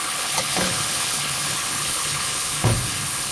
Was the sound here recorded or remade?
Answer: remade